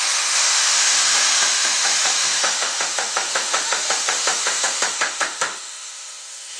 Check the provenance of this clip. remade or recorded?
remade